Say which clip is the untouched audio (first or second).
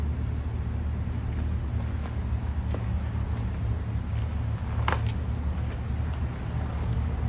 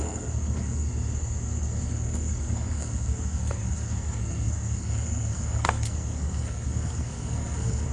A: first